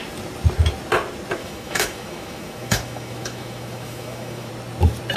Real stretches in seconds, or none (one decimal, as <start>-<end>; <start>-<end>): 0.0-1.4; 4.5-5.2